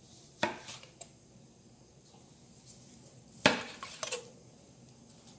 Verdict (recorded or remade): recorded